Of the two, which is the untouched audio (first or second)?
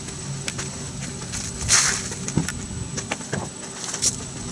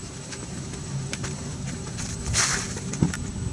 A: first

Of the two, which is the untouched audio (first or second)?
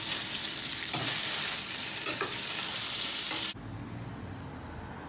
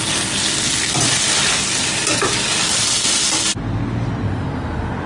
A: second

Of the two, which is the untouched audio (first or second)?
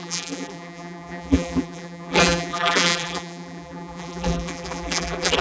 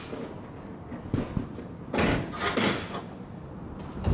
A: second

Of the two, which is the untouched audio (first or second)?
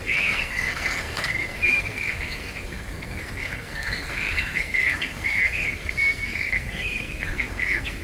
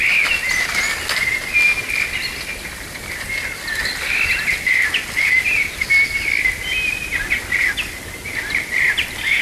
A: second